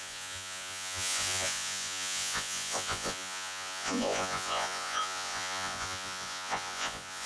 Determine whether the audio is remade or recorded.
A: remade